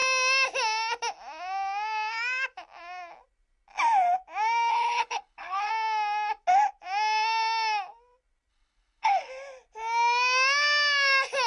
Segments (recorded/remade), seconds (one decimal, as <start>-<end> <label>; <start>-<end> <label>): 0.0-4.7 recorded; 4.7-5.7 remade; 5.7-8.5 recorded; 8.5-9.3 remade; 9.3-11.5 recorded